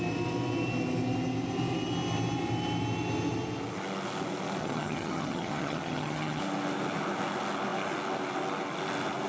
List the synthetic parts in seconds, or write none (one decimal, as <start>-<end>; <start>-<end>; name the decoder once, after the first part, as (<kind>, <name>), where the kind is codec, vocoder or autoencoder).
4.6-6.4 (vocoder, HiFi-GAN)